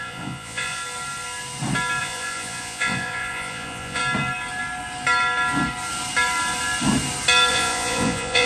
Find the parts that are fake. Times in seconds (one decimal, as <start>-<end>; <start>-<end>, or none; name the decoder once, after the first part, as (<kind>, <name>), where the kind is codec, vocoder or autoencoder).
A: 0.0-0.8 (vocoder, Vocos); 2.0-4.0; 7.5-8.5

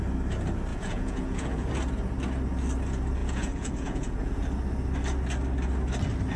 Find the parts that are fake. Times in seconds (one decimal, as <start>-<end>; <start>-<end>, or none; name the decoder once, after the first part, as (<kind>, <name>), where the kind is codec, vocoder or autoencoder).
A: 0.7-1.7 (vocoder, Vocos); 3.2-4.4

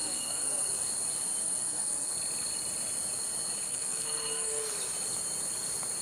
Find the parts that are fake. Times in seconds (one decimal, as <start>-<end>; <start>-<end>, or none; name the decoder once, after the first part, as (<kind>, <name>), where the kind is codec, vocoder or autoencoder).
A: 0.0-0.9 (codec, SNAC); 1.4-2.1; 3.7-4.7

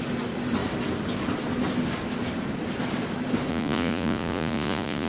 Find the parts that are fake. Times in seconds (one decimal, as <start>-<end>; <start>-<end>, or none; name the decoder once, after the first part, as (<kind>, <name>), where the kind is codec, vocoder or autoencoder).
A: 3.5-5.1 (vocoder, Vocos)

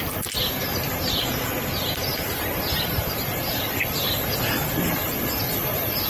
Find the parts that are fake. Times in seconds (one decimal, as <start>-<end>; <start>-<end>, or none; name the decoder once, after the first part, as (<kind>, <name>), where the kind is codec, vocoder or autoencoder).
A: 2.1-3.6 (vocoder, BigVGAN v2)